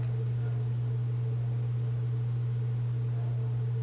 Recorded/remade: recorded